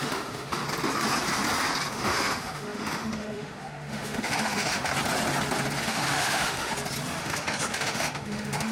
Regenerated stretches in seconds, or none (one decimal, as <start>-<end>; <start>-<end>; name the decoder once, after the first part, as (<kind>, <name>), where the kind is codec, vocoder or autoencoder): 0.0-0.6 (autoencoder, DAC-VAE); 1.9-4.9; 5.8-6.7; 7.2-8.7